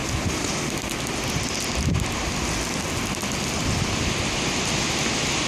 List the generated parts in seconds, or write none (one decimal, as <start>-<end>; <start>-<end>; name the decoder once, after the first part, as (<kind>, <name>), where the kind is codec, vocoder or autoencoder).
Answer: none